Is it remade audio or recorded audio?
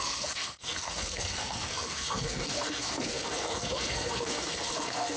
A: remade